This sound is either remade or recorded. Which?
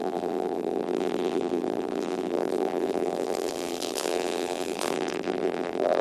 remade